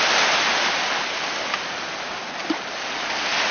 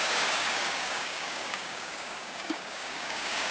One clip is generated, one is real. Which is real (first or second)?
first